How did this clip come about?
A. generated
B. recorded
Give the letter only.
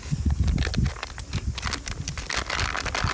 B